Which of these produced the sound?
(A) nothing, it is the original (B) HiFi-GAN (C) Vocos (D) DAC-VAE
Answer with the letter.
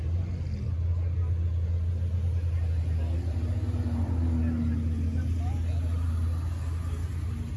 A